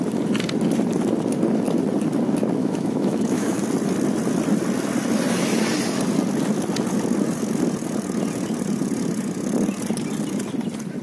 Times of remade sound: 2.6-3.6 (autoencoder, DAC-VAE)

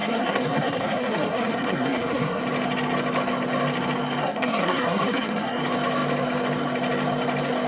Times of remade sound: 0.0-2.4 (codec, SNAC); 4.2-5.6

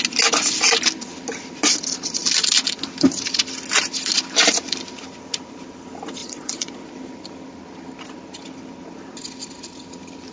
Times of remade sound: 6.2-6.8 (vocoder, Vocos)

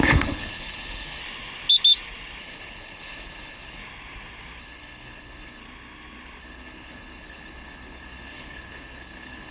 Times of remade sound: 0.0-1.2 (codec, HILCodec); 2.4-3.8; 4.6-5.6; 6.4-9.5